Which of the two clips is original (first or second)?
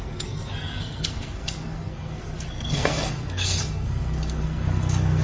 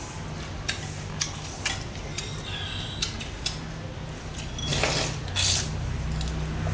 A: second